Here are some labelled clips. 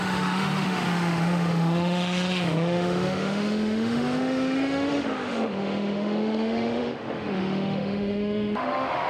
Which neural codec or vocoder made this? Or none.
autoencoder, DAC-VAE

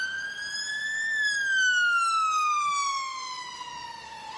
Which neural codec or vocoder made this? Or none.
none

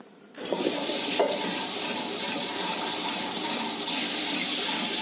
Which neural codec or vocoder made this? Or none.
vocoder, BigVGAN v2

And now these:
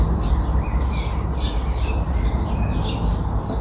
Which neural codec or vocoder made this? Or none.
none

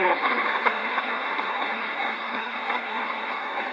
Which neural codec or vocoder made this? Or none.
codec, SNAC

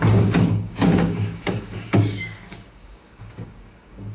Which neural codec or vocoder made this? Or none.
codec, DAC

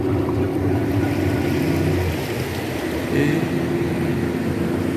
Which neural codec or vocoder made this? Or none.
none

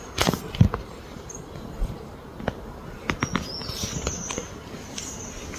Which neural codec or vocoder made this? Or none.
none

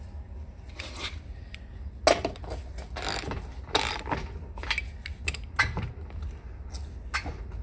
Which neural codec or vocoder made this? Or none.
none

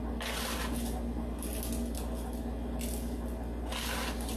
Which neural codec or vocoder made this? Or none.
none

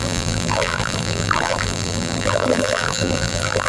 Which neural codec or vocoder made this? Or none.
vocoder, BigVGAN v2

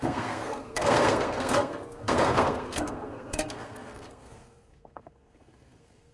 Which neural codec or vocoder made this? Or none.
codec, SNAC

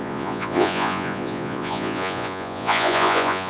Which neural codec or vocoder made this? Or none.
vocoder, Vocos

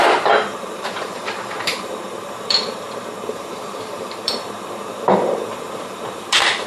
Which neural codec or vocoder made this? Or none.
vocoder, BigVGAN v2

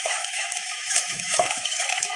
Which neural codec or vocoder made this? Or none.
autoencoder, DAC-VAE